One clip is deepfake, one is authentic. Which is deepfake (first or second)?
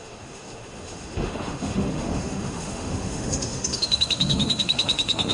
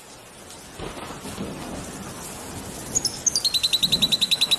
first